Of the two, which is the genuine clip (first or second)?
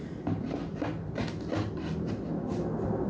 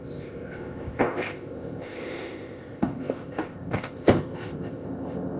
first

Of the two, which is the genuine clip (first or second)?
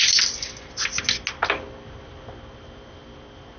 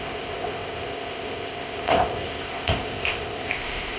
first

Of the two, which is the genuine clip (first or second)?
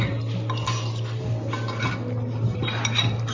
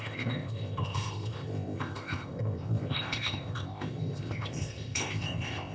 first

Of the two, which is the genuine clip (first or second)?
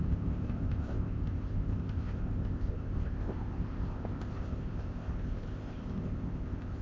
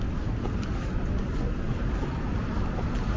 second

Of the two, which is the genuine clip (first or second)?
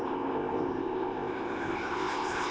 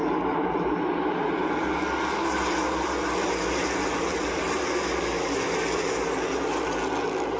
second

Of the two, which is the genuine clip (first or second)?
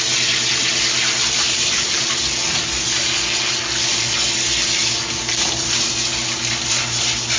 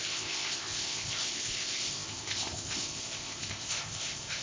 first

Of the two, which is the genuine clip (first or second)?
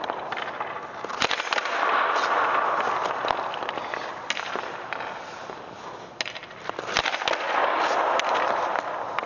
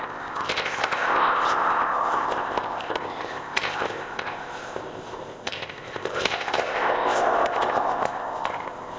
first